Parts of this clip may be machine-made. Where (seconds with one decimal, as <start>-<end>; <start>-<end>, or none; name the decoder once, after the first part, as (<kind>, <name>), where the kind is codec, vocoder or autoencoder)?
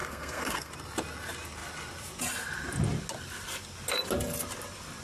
0.0-0.7 (codec, SNAC)